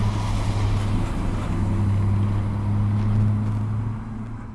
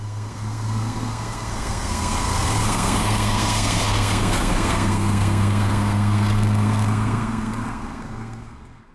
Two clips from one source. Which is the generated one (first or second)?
second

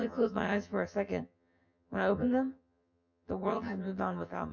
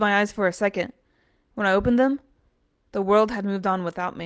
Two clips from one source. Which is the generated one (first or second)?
first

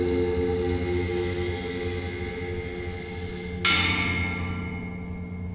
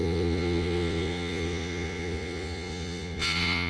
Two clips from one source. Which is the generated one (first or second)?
second